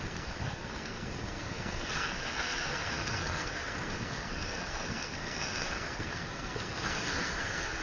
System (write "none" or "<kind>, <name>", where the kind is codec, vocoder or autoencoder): codec, SNAC